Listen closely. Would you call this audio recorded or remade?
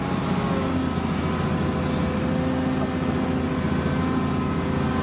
recorded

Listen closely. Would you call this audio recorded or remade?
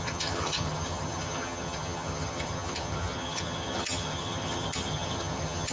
remade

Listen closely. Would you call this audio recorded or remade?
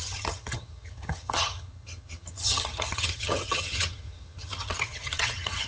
remade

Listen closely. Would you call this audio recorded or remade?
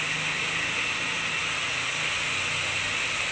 recorded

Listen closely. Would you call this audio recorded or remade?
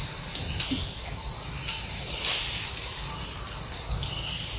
recorded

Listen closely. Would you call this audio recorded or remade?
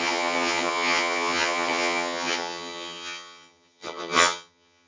remade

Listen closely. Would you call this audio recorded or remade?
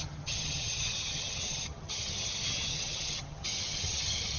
remade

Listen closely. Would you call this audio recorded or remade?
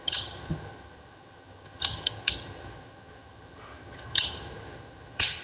remade